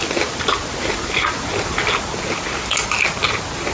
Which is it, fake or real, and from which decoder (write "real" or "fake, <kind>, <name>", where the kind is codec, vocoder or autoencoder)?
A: real